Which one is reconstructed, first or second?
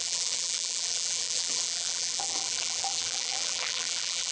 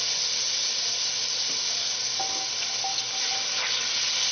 first